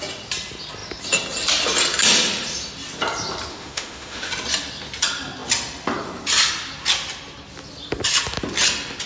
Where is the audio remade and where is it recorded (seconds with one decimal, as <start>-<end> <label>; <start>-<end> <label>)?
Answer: 0.0-3.5 recorded; 3.5-4.3 remade; 4.3-9.1 recorded